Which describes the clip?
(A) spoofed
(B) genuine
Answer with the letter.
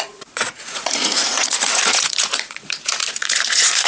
A